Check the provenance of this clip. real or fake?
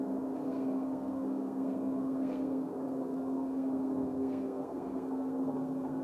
fake